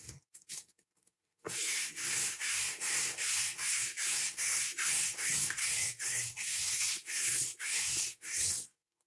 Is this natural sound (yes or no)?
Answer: no